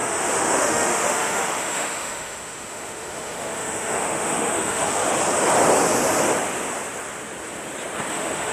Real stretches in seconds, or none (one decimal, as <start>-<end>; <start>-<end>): 5.0-8.1